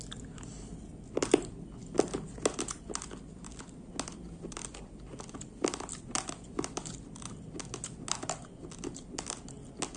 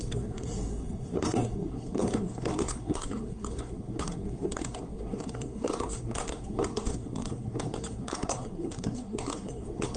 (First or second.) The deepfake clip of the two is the second